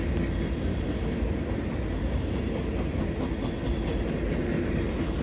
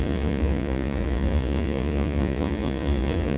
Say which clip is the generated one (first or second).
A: second